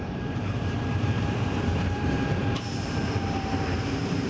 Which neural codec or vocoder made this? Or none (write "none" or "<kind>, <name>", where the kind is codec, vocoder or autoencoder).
vocoder, BigVGAN v2